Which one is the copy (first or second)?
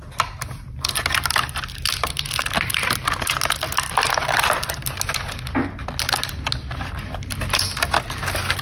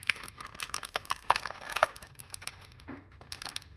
second